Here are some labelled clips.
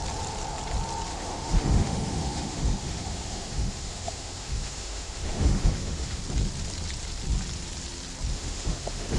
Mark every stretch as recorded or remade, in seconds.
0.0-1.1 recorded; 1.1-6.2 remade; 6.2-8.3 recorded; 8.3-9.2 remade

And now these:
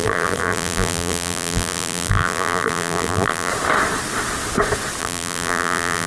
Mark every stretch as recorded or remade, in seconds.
0.0-3.5 remade; 3.5-5.0 recorded; 5.0-6.1 remade

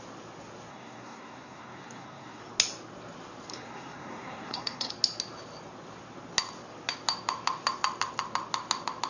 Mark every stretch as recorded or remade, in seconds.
0.0-0.7 recorded; 0.7-2.4 remade; 2.4-3.5 recorded; 3.5-4.9 remade; 4.9-9.1 recorded